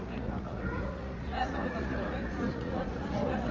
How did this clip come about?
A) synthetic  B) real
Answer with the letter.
A